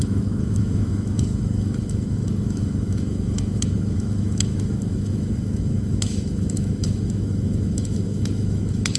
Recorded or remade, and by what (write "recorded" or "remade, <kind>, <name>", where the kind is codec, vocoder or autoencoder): remade, autoencoder, DAC-VAE